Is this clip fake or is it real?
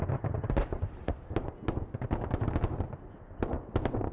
real